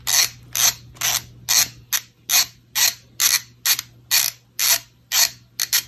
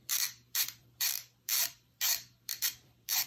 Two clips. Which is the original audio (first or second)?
first